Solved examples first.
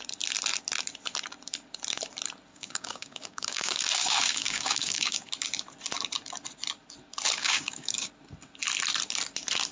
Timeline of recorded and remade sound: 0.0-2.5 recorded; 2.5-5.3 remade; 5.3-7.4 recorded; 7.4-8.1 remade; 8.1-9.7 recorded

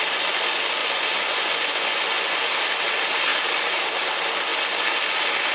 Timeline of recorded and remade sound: 0.0-0.8 recorded; 0.8-2.4 remade; 2.4-5.5 recorded

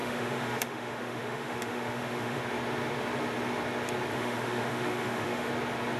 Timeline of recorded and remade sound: 0.0-2.4 remade; 2.4-4.1 recorded; 4.1-5.5 remade; 5.5-6.0 recorded

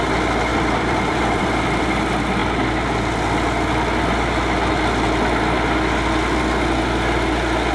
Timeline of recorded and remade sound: 0.0-0.5 recorded; 0.5-1.8 remade; 1.8-7.7 recorded